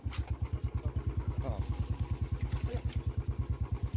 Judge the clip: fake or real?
real